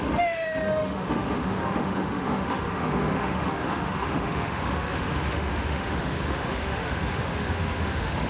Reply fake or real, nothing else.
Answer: fake